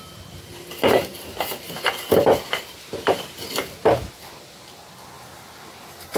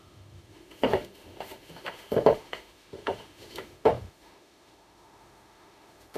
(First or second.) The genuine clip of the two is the first